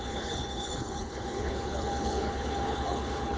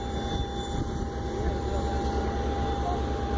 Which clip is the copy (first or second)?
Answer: first